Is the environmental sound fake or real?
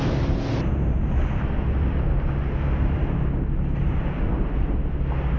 real